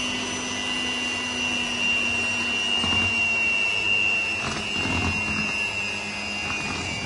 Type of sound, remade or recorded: recorded